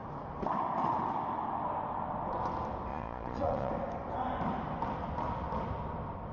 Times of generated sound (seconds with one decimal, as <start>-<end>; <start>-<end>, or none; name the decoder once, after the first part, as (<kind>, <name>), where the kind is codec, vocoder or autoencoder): 2.9-3.7 (vocoder, Vocos)